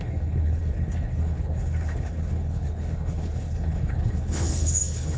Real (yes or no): no